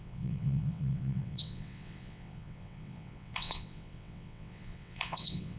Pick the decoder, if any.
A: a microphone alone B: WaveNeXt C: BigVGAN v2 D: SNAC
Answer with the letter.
B